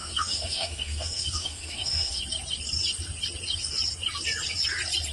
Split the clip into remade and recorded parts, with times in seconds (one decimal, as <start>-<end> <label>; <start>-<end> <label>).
0.0-2.2 remade; 2.2-5.1 recorded